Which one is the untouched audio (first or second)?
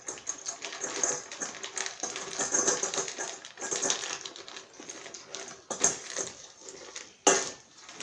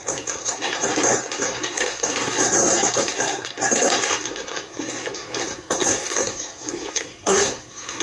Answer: first